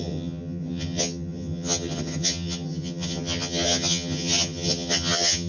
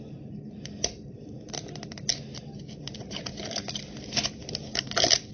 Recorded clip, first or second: second